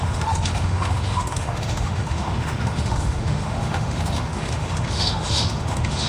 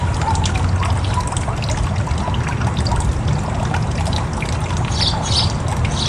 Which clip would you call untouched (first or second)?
second